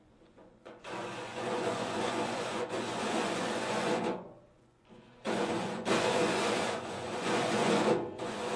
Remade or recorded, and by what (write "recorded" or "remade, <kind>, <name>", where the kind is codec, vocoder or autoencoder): remade, vocoder, Vocos